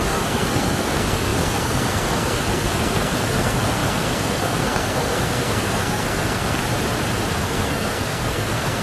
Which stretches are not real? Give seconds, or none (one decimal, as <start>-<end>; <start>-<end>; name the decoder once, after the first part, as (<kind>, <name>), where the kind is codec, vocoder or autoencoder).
0.0-6.6 (codec, SNAC); 7.3-8.8